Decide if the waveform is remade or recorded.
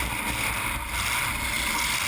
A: recorded